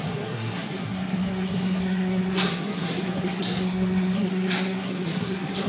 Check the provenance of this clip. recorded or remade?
remade